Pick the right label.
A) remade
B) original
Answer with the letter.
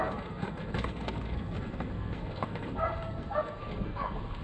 A